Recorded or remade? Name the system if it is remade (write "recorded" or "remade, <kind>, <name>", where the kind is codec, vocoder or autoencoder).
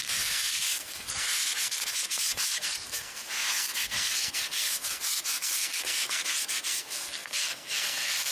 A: remade, codec, SNAC